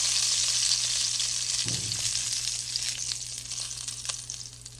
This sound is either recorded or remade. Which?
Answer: recorded